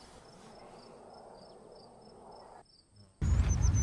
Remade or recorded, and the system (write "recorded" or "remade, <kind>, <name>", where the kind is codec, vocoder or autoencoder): recorded